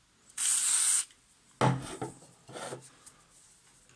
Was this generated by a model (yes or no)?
no